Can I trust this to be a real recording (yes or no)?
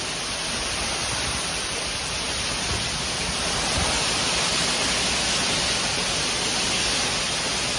yes